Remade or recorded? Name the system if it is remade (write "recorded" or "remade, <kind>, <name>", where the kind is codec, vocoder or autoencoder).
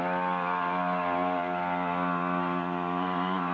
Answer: recorded